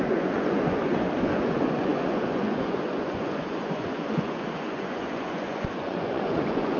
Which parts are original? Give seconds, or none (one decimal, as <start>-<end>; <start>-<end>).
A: none

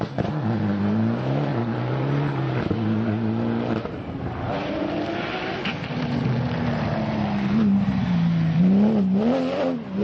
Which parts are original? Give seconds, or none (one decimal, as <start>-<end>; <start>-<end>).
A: 0.0-10.0